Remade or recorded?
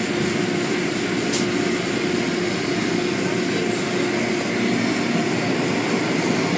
recorded